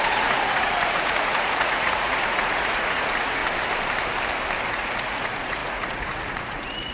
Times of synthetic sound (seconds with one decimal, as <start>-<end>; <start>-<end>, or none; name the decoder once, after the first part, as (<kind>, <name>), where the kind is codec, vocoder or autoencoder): 0.0-3.4 (vocoder, Vocos); 4.7-6.9